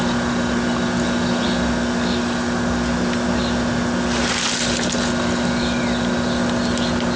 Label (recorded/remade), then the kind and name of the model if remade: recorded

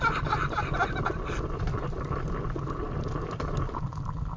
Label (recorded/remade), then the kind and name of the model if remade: recorded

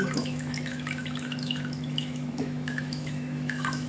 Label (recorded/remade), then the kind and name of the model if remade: remade, autoencoder, DAC-VAE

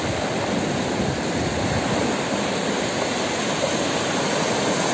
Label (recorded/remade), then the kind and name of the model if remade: recorded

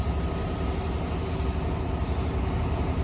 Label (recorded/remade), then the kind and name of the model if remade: recorded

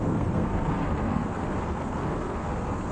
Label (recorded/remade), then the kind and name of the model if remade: remade, codec, SNAC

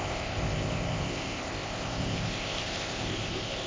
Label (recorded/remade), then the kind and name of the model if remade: remade, codec, ZipCodec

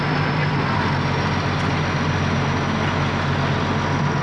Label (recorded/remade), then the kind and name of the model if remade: recorded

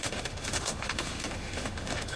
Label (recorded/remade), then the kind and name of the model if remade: remade, autoencoder, DAC-VAE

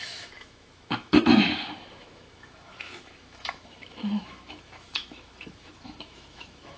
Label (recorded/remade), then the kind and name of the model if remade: remade, autoencoder, DAC-VAE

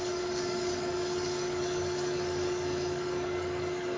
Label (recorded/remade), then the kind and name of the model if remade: remade, codec, DAC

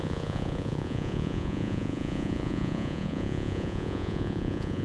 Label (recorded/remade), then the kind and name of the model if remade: remade, vocoder, Vocos